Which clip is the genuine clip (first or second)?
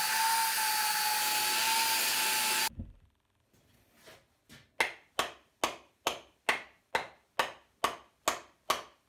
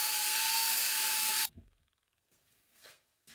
first